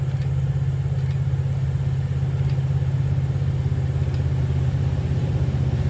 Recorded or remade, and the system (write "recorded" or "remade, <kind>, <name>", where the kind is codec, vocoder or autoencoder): recorded